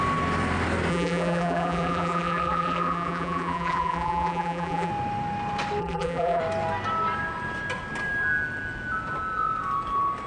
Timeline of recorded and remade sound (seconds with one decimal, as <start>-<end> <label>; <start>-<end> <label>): 0.0-0.9 recorded; 0.9-4.9 remade; 4.9-5.8 recorded; 5.8-6.4 remade; 6.4-10.3 recorded